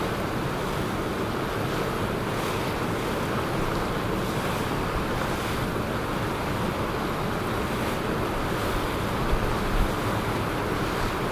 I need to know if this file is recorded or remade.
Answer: recorded